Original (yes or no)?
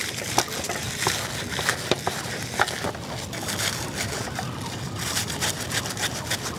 yes